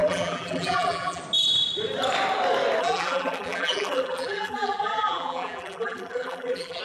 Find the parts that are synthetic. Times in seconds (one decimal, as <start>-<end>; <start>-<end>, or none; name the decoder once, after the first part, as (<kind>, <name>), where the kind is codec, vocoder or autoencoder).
0.0-1.2 (vocoder, BigVGAN v2); 2.8-6.8